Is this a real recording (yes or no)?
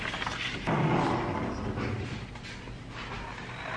yes